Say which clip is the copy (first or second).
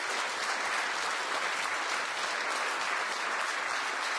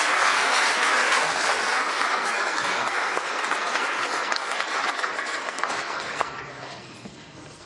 second